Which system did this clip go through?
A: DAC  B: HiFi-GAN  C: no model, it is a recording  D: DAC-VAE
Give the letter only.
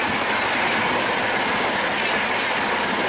C